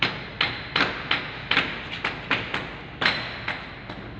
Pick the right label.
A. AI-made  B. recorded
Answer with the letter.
B